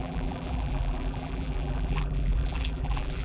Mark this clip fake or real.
fake